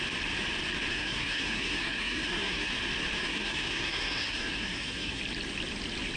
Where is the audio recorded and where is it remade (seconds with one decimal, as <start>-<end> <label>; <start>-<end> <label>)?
0.0-0.9 recorded; 0.9-2.7 remade; 2.7-3.2 recorded; 3.2-5.2 remade; 5.2-6.2 recorded